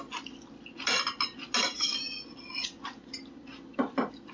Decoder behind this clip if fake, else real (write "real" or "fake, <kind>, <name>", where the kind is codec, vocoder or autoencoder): real